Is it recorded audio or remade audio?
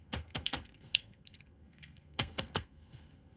remade